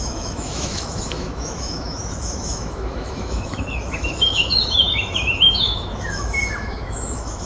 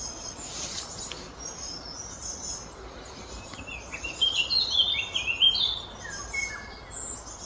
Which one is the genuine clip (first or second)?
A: second